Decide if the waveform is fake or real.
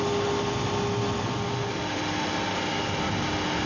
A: real